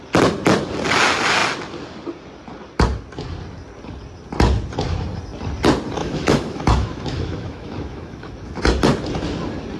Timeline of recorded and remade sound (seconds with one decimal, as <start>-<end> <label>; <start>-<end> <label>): 0.0-6.0 recorded; 6.0-8.6 remade; 8.6-9.8 recorded